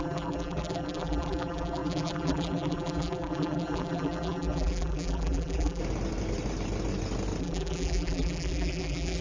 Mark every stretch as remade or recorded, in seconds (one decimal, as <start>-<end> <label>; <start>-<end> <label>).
0.0-5.8 remade; 5.8-7.4 recorded; 7.4-9.2 remade